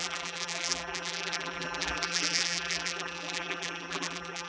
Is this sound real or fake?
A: fake